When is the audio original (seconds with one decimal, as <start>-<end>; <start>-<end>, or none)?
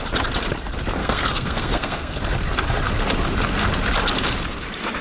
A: 0.0-1.0; 2.2-5.0